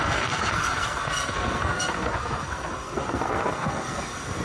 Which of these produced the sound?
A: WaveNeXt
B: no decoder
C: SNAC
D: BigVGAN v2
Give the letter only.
C